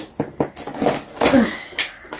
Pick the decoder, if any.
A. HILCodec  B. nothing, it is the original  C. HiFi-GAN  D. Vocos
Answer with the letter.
B